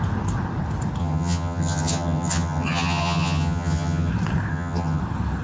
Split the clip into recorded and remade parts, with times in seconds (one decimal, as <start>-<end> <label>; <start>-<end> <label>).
0.0-1.0 recorded; 1.0-4.1 remade; 4.1-4.5 recorded; 4.5-5.0 remade; 5.0-5.4 recorded